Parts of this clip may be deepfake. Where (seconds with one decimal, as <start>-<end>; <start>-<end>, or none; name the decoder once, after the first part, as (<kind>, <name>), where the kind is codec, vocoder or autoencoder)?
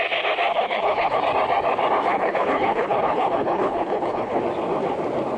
0.5-1.2 (codec, HILCodec); 2.1-4.4